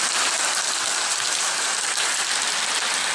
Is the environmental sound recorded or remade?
recorded